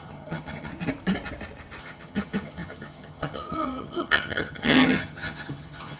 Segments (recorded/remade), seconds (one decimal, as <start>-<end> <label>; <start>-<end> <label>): 0.0-0.7 remade; 0.7-1.8 recorded; 1.8-6.0 remade